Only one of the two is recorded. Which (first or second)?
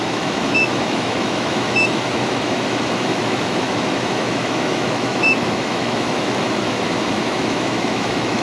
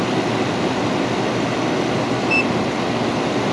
second